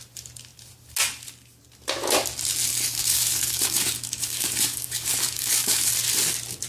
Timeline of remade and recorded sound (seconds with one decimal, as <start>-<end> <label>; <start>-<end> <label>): 0.0-2.7 recorded; 2.7-5.9 remade; 5.9-6.7 recorded

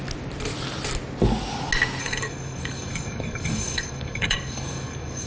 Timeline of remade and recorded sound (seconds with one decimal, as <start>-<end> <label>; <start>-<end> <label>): 0.0-2.0 recorded; 2.0-5.3 remade